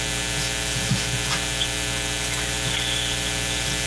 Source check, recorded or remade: recorded